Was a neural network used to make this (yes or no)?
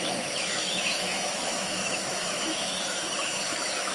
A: yes